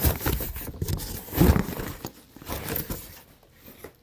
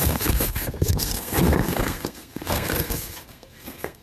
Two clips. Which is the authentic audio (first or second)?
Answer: first